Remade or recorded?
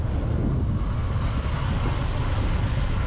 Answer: recorded